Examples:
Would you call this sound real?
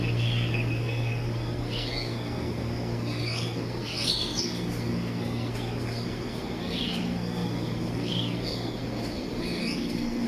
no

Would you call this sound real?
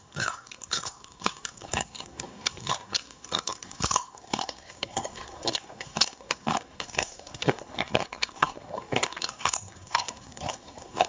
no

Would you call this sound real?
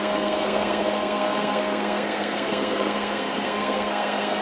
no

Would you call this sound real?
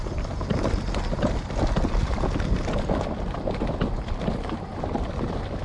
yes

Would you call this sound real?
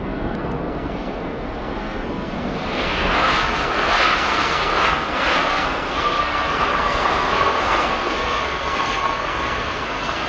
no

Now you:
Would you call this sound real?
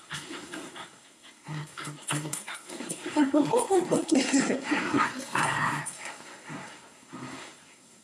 no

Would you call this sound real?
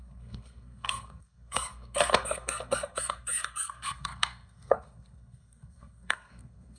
no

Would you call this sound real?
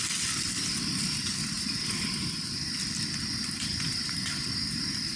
yes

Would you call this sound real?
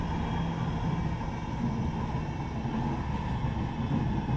yes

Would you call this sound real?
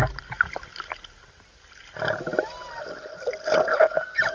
yes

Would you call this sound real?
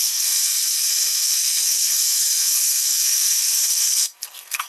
no